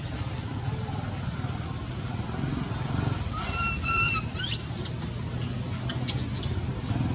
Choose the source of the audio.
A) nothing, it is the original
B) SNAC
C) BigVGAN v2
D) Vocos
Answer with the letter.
A